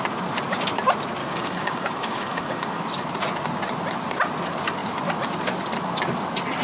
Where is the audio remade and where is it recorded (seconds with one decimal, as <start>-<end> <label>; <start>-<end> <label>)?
0.0-1.2 recorded; 1.2-2.8 remade; 2.8-6.6 recorded